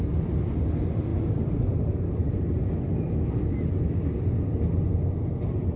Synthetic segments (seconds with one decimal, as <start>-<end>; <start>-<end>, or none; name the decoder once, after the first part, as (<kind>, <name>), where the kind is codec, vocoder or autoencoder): none